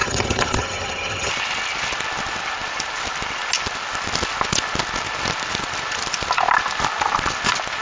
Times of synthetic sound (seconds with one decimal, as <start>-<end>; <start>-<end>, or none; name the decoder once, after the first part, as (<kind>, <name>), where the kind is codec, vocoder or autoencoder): 0.0-1.3 (vocoder, HiFi-GAN)